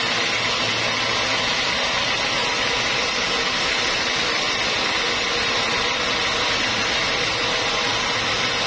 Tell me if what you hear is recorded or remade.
recorded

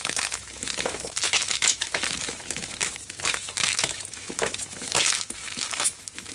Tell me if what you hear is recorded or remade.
remade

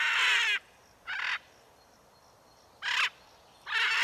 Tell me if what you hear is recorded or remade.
recorded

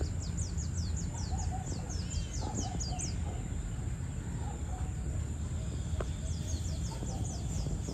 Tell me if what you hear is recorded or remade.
recorded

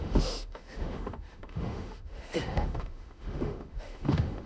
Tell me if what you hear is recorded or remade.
remade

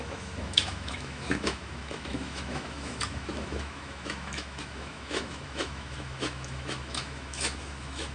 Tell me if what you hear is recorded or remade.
remade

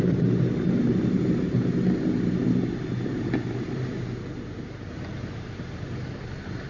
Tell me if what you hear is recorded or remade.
recorded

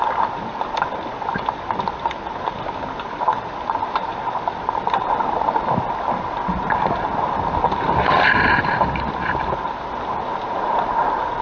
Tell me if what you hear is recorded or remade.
recorded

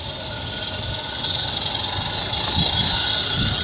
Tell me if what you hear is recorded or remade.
recorded